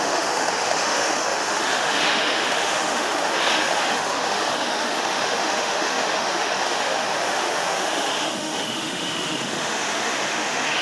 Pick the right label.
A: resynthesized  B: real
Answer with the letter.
A